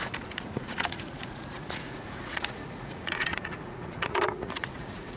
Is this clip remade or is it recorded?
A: remade